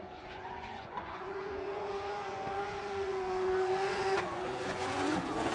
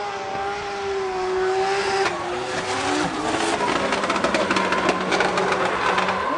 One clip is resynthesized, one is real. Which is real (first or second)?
second